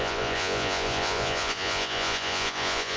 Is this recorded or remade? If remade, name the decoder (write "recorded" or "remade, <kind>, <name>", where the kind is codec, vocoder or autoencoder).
remade, vocoder, Vocos